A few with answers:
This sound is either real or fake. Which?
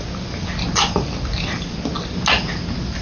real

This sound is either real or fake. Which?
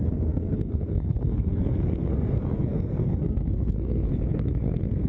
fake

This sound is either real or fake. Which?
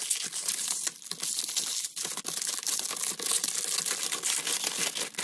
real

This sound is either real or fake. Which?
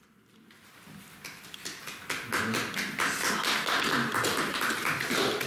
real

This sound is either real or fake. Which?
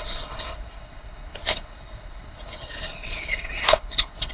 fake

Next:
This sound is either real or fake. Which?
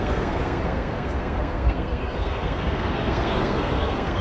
fake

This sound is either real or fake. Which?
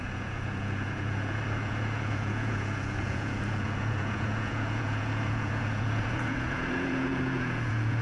fake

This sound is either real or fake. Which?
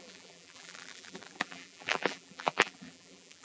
fake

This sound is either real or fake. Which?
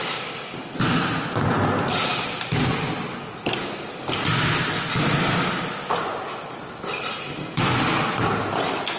real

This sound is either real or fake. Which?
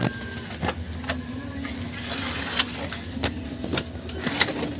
real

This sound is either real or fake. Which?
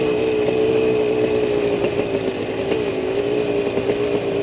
real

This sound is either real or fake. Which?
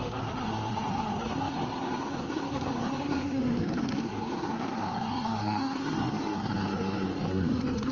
fake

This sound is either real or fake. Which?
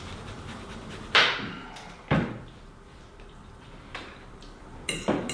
fake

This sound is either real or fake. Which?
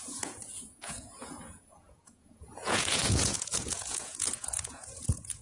fake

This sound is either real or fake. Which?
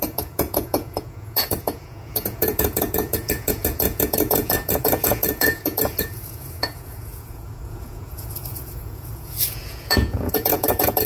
fake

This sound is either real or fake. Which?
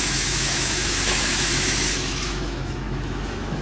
fake